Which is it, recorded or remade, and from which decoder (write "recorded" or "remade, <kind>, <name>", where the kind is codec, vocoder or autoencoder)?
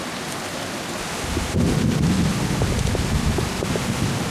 recorded